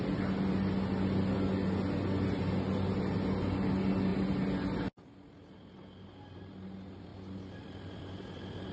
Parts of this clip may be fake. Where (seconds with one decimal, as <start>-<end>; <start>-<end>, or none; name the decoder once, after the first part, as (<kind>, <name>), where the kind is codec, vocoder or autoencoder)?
4.1-5.1 (vocoder, BigVGAN v2); 7.1-8.0